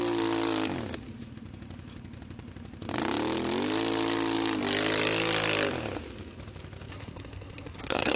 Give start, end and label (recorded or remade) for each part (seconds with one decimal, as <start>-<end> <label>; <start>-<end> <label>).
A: 0.0-6.9 recorded; 6.9-8.2 remade